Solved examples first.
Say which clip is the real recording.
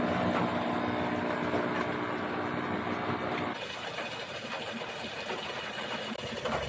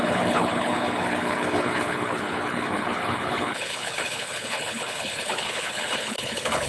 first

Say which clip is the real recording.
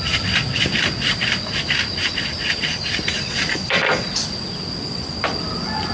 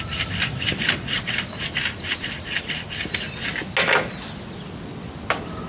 second